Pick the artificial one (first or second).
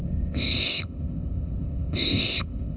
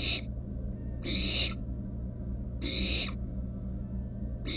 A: first